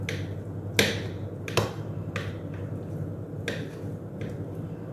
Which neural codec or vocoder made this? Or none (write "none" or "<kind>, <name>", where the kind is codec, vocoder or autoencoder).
none